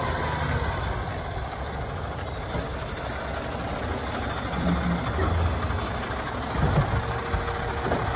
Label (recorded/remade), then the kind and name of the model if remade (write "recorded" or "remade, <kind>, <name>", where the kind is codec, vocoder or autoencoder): recorded